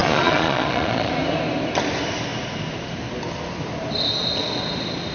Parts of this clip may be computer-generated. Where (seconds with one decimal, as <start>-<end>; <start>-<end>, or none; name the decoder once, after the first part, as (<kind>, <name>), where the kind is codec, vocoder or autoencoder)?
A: 0.0-1.1 (vocoder, Vocos)